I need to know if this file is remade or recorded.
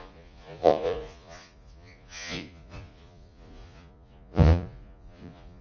remade